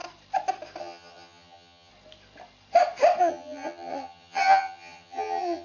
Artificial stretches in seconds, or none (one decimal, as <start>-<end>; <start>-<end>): 0.8-1.9; 3.2-5.6